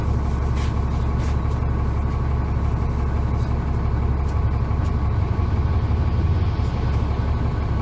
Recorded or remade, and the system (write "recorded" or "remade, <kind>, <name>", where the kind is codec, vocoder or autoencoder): recorded